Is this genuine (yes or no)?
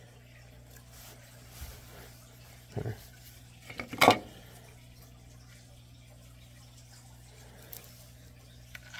yes